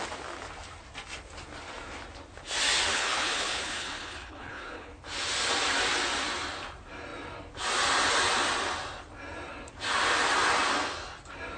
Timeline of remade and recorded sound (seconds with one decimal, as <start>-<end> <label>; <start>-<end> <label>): 0.0-2.9 recorded; 2.9-4.9 remade; 4.9-11.6 recorded